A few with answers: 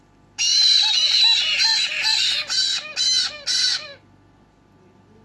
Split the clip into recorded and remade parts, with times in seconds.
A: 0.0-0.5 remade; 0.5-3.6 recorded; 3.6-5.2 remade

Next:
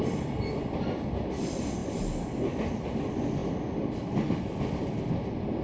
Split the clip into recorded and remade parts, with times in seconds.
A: 0.0-5.6 recorded

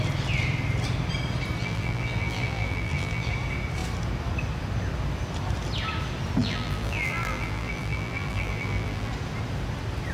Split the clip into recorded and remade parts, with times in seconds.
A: 0.0-1.6 recorded; 1.6-3.3 remade; 3.3-6.4 recorded; 6.4-9.1 remade; 9.1-10.1 recorded

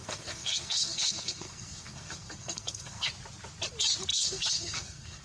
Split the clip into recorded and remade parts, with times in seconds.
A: 0.0-3.1 remade; 3.1-4.1 recorded; 4.1-5.2 remade

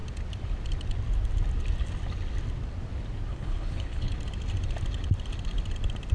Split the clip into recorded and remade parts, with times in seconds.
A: 0.0-3.3 recorded; 3.3-4.1 remade; 4.1-6.1 recorded

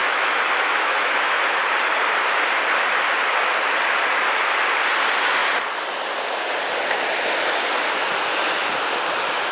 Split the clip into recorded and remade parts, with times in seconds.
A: 0.0-1.4 remade; 1.4-9.5 recorded

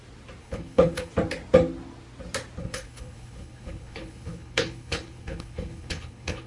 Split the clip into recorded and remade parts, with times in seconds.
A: 0.0-0.4 recorded; 0.4-1.1 remade; 1.1-2.6 recorded; 2.6-6.5 remade